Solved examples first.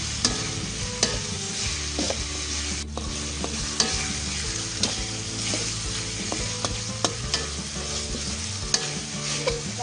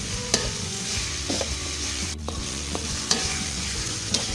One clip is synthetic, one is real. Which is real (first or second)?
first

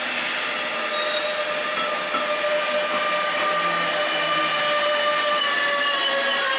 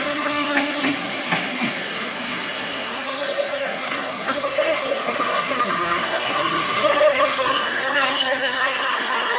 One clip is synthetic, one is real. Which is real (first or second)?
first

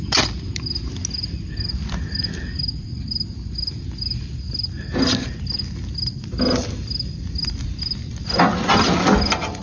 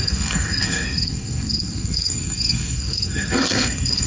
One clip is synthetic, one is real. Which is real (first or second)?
first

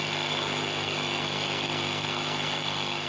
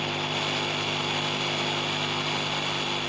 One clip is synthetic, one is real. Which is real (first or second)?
second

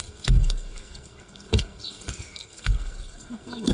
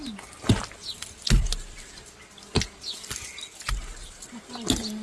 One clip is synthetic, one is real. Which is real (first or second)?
second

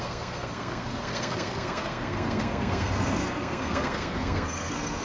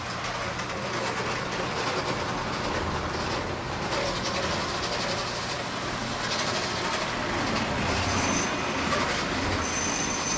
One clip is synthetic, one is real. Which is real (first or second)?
second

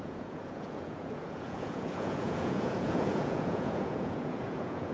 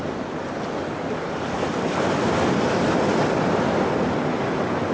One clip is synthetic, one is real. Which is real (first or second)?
second